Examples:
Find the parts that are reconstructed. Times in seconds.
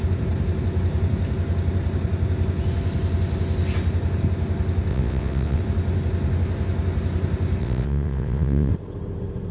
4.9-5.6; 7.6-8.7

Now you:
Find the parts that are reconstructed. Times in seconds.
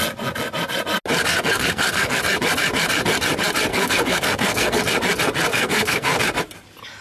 1.3-2.2; 3.7-4.8; 5.5-6.2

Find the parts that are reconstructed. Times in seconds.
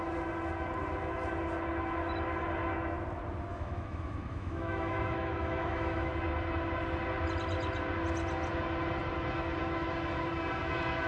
3.5-6.1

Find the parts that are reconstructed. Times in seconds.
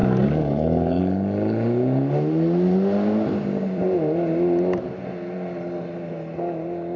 0.0-1.0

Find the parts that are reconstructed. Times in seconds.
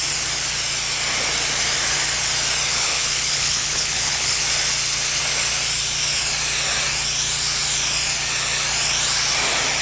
2.7-4.4